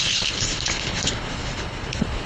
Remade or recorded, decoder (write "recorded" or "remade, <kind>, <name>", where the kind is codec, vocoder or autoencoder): remade, codec, HILCodec